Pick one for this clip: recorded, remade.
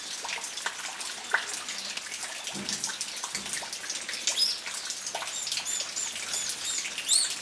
recorded